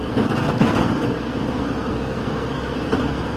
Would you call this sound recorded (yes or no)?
no